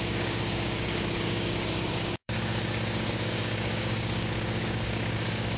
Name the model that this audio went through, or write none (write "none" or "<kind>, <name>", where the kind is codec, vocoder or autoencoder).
codec, DAC